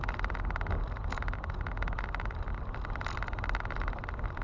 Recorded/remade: recorded